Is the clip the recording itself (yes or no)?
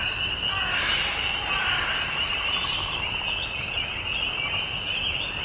yes